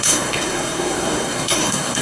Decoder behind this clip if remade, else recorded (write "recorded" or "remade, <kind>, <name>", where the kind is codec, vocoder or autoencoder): remade, codec, SNAC